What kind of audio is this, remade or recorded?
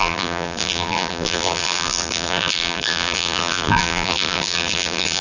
remade